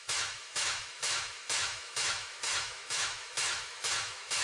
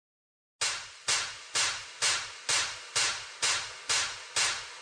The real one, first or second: second